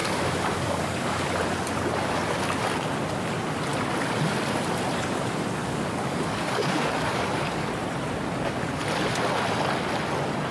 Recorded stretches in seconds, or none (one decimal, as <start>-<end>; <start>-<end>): 1.3-5.6; 7.7-10.5